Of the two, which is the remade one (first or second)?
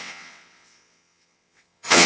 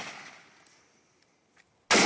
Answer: first